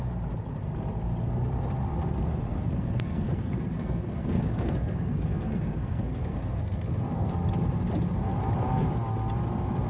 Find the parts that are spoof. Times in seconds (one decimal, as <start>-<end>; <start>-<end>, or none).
2.5-7.3